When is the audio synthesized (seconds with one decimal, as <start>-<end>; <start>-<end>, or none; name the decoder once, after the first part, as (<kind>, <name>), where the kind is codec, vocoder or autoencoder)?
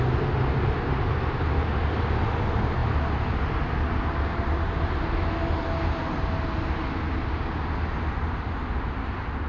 none